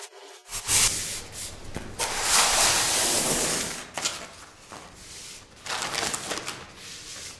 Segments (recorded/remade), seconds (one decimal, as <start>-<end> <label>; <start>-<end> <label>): 0.0-0.5 remade; 0.5-2.0 recorded; 2.0-4.1 remade; 4.1-4.7 recorded; 4.7-7.4 remade